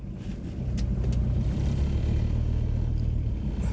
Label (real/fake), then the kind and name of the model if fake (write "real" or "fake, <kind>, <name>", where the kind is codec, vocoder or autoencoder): real